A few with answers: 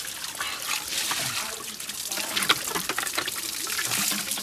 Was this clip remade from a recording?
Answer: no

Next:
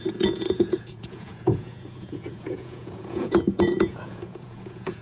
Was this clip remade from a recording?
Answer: yes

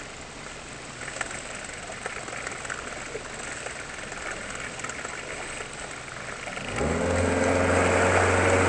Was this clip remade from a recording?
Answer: no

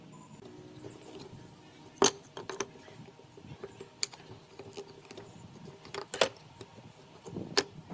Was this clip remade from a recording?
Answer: no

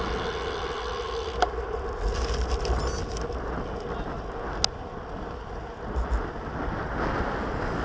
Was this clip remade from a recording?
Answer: no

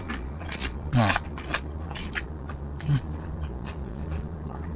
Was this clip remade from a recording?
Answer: yes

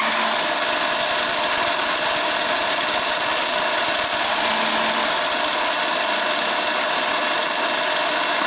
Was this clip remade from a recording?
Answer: no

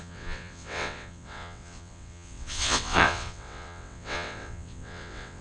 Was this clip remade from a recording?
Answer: yes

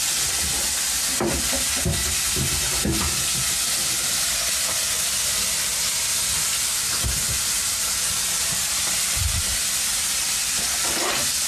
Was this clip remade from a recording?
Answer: yes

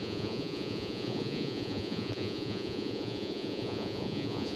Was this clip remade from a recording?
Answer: yes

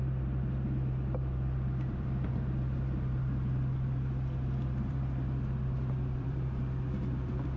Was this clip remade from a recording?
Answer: yes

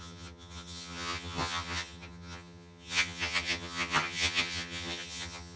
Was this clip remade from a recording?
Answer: yes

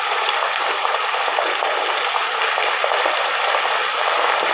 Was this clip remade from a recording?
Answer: no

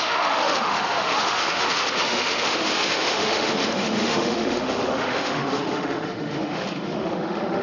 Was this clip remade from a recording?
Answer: yes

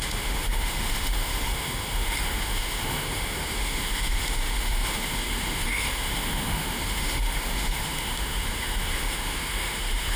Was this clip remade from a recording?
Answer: yes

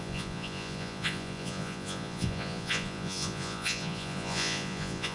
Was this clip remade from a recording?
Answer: yes